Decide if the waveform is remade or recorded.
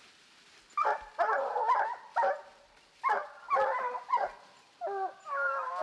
recorded